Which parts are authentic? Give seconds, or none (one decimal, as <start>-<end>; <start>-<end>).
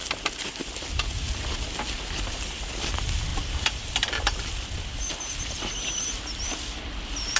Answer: 0.0-2.3